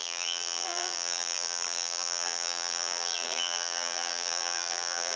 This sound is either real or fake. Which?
fake